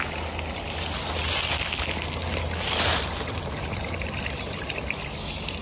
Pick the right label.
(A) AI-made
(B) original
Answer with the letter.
B